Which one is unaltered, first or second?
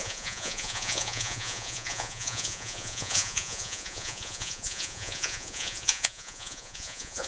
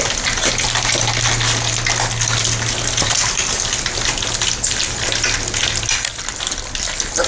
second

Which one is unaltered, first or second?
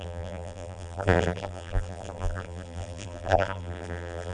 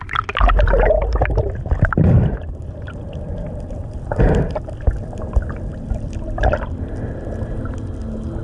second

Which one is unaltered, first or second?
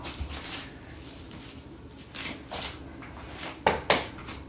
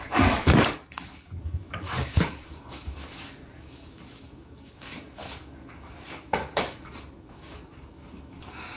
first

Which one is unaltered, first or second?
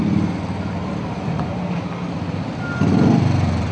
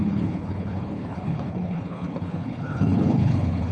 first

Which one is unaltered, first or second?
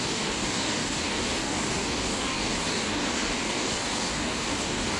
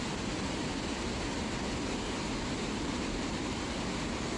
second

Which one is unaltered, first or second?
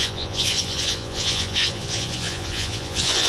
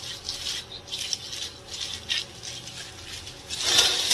second